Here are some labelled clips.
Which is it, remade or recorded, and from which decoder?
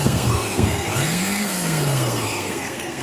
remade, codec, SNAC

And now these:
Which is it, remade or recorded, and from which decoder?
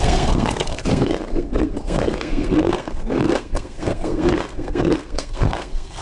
remade, codec, SNAC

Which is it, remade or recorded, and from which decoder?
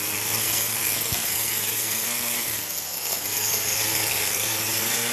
remade, codec, SNAC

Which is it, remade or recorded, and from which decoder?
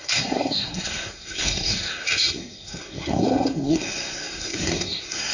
remade, codec, SNAC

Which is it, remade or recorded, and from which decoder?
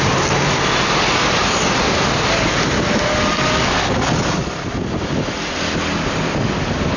recorded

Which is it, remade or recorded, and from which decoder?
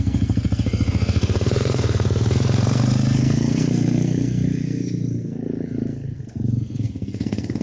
remade, codec, SNAC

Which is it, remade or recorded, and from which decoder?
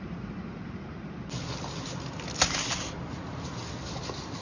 recorded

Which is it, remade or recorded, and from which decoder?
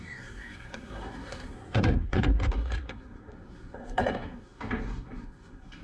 remade, codec, SNAC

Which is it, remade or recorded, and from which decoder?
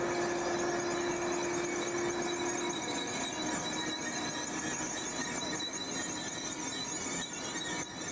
recorded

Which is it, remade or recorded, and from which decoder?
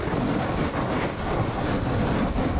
recorded